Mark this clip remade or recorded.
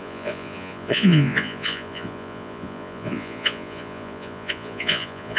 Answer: remade